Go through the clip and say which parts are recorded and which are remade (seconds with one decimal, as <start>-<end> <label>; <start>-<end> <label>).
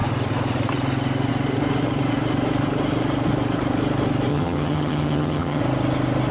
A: 0.0-4.3 recorded; 4.3-5.6 remade; 5.6-6.3 recorded